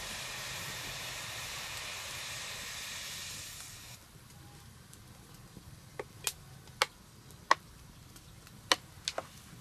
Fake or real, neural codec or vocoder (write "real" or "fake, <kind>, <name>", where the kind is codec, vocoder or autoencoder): real